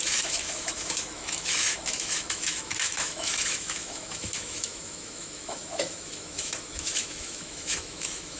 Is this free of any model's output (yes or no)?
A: no